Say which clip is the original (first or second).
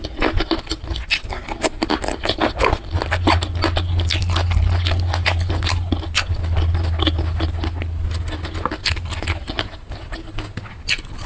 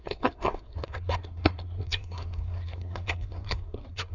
first